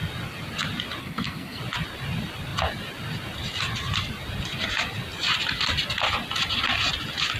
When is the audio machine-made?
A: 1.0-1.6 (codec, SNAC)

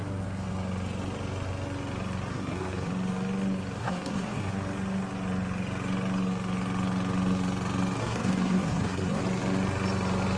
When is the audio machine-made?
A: 2.3-2.9 (codec, SNAC); 3.8-4.5; 8.0-9.2

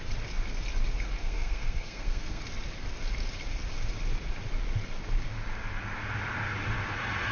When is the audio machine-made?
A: 1.2-2.4 (codec, SNAC)